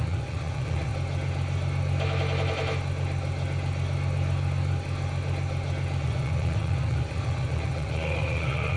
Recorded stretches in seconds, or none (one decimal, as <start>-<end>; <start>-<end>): 0.9-6.0